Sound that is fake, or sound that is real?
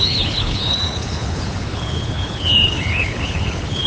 fake